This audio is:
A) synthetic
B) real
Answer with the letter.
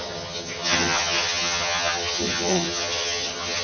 A